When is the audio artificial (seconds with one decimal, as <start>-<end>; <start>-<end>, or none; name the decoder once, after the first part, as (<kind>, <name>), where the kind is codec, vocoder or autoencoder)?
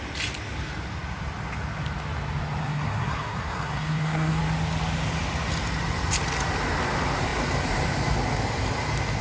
2.6-4.4 (codec, SNAC)